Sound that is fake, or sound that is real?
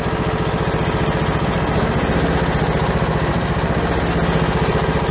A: real